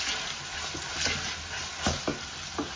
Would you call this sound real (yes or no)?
yes